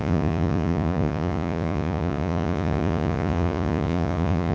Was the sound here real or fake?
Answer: fake